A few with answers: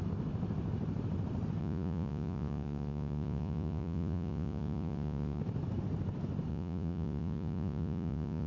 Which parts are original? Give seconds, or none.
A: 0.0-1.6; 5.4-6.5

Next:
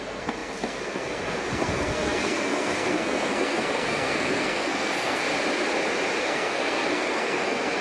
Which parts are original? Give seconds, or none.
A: 5.3-6.2

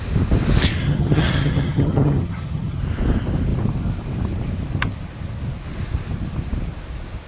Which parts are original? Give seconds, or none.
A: 0.0-0.8; 2.8-7.3